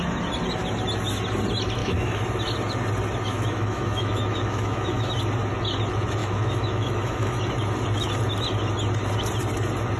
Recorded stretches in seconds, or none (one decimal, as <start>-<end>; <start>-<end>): 0.0-1.8; 2.3-3.3; 5.2-6.2; 7.4-10.0